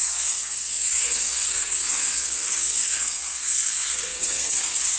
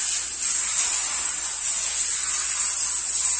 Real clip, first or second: second